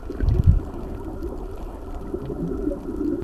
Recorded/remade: recorded